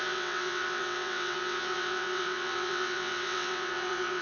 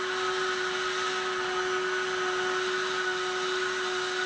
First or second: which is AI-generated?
first